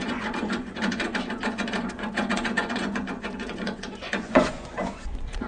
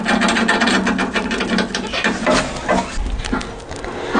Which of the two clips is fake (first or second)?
first